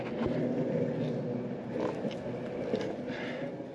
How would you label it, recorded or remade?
recorded